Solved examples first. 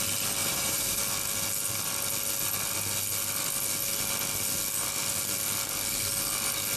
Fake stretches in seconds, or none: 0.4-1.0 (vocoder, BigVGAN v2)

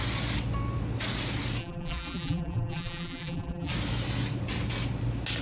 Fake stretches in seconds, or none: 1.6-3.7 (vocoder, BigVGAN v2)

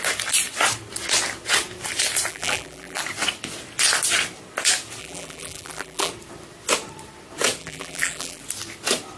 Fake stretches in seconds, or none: 2.3-3.0 (vocoder, BigVGAN v2); 5.0-6.1; 7.6-8.4